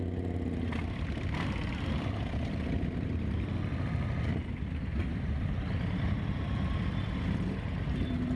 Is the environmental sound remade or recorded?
recorded